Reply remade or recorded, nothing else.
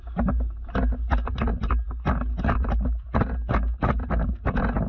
recorded